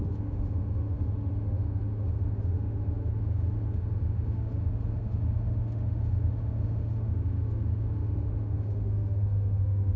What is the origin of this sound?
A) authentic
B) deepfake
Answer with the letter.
B